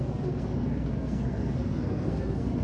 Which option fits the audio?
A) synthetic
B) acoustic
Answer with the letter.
A